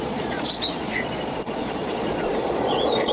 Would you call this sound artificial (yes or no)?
yes